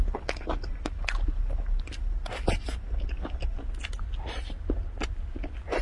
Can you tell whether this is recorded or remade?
recorded